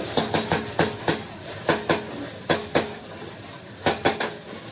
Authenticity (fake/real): real